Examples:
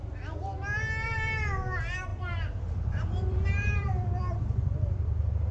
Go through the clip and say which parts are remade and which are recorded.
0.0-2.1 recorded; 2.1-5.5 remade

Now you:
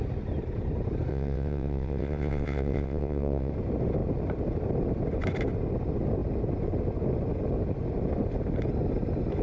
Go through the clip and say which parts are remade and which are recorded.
0.0-1.1 recorded; 1.1-3.5 remade; 3.5-9.4 recorded

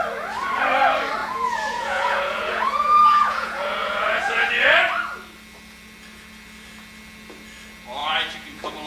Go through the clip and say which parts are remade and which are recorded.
0.0-1.2 recorded; 1.2-4.5 remade; 4.5-8.0 recorded; 8.0-8.9 remade

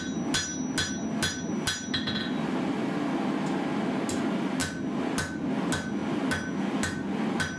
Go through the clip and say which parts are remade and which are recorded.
0.0-7.6 recorded